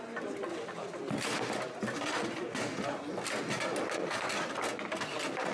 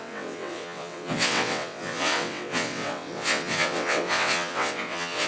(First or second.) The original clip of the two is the first